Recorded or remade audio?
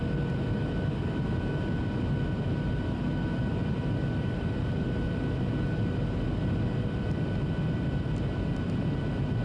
recorded